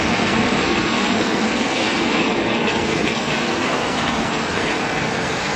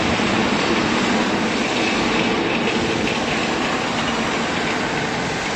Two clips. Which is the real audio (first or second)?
second